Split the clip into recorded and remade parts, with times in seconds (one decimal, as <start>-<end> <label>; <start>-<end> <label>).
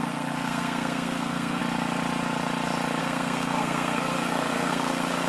0.0-1.6 remade; 1.6-3.0 recorded; 3.0-5.3 remade